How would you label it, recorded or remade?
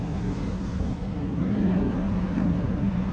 remade